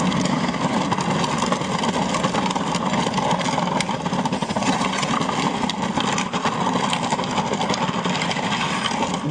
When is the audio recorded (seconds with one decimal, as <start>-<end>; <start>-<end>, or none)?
0.0-4.4; 5.1-9.3